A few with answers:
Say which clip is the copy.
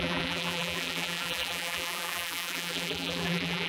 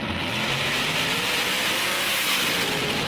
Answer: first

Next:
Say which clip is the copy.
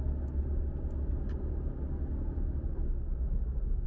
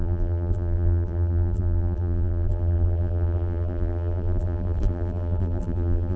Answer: second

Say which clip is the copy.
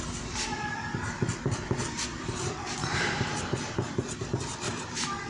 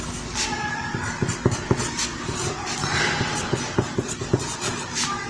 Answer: first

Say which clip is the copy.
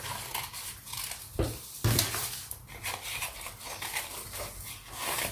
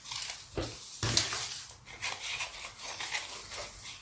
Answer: first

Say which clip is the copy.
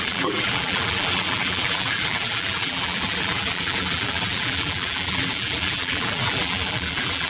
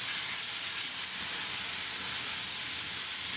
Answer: first